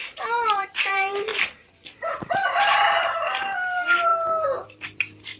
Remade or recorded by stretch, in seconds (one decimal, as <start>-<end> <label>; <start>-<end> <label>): 0.0-1.3 remade; 1.3-2.6 recorded; 2.6-5.4 remade